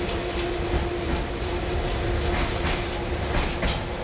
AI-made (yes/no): no